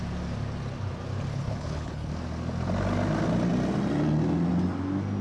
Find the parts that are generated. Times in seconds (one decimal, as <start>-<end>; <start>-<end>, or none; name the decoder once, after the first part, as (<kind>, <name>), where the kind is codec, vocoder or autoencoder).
1.3-2.1 (codec, HILCodec)